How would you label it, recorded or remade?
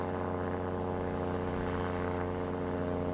recorded